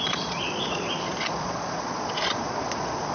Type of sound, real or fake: fake